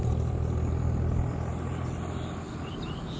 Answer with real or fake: real